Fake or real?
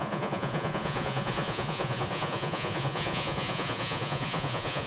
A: fake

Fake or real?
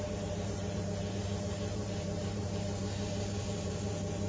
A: fake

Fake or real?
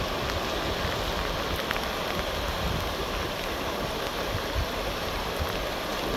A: real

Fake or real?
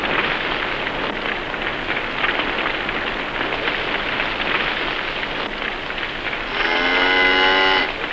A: real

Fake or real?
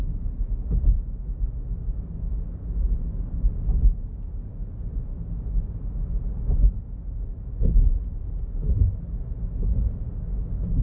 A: real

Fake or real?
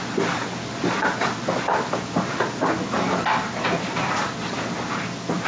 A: real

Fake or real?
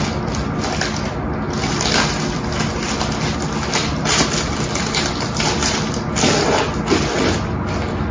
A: real